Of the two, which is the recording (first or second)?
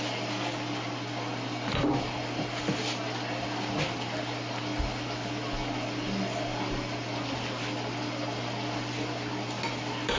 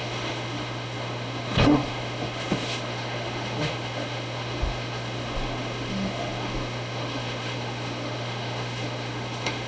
first